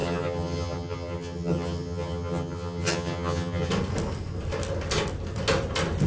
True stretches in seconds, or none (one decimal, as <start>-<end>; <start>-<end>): 3.7-6.1